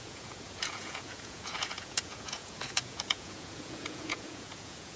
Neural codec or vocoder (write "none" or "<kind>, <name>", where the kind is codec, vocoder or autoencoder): vocoder, Vocos